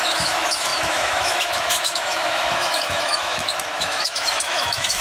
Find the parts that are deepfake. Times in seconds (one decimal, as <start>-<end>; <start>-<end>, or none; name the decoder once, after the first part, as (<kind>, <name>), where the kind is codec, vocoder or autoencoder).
0.0-5.0 (autoencoder, DAC-VAE)